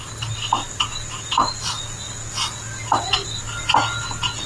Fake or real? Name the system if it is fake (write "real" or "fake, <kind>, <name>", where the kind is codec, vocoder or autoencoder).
real